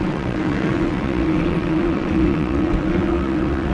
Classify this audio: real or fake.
fake